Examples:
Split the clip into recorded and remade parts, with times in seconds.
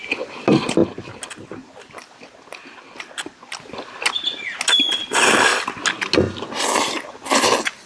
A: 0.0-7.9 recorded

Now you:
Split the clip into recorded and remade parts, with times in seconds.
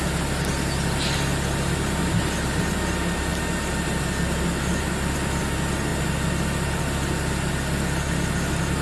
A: 0.0-8.8 recorded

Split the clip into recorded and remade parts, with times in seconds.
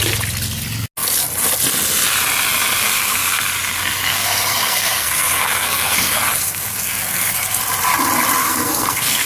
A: 0.0-2.8 recorded; 2.8-3.5 remade; 3.5-4.1 recorded; 4.1-7.6 remade; 7.6-8.4 recorded; 8.4-9.3 remade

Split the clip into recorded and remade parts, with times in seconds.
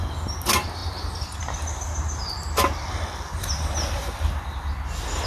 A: 0.0-5.3 recorded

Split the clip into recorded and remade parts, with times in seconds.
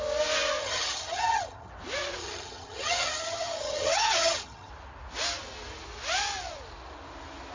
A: 0.0-0.6 recorded; 0.6-1.7 remade; 1.7-2.2 recorded; 2.2-4.7 remade; 4.7-7.5 recorded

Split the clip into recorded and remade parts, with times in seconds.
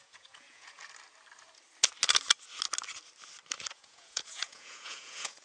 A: 0.0-0.8 remade; 0.8-3.7 recorded; 3.7-5.4 remade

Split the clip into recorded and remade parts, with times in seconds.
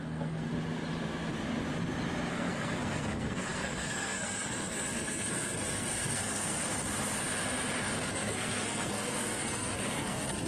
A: 0.0-0.5 remade; 0.5-2.3 recorded; 2.3-6.6 remade; 6.6-8.1 recorded; 8.1-10.5 remade